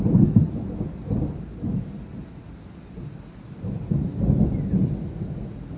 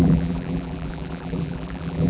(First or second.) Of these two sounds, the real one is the first